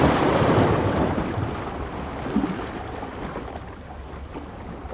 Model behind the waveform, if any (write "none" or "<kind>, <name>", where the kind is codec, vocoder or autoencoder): none